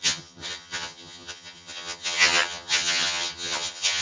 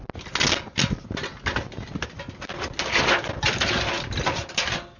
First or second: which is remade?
first